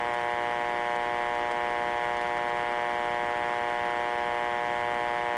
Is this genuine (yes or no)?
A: yes